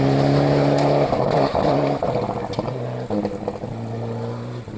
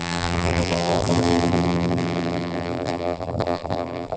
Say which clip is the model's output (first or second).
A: second